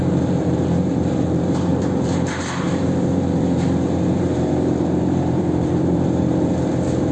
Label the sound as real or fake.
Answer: fake